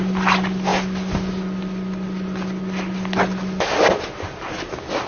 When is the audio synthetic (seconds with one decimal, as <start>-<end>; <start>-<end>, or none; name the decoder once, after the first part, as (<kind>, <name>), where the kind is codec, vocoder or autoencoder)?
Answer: none